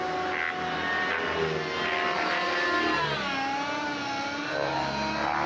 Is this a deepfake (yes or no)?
no